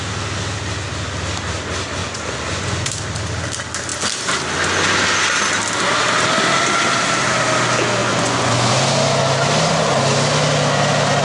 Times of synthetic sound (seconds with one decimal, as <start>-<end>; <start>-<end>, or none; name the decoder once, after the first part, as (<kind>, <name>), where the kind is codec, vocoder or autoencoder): 2.0-2.9 (vocoder, Vocos); 8.0-8.7